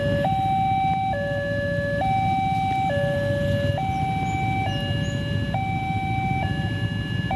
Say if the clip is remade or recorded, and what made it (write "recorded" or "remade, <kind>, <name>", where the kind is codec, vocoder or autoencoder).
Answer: recorded